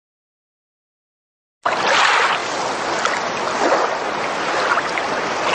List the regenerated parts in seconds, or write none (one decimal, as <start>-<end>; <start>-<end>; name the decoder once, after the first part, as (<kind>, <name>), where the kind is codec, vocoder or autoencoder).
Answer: none